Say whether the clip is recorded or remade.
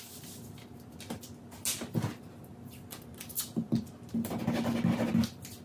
recorded